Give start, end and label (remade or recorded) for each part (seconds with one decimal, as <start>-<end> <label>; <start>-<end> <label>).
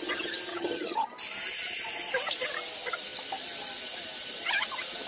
0.0-0.5 recorded; 0.5-1.1 remade; 1.1-5.1 recorded